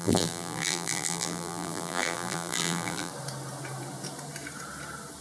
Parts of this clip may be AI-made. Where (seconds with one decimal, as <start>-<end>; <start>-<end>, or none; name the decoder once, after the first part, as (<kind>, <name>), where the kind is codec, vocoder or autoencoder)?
0.0-3.1 (vocoder, BigVGAN v2)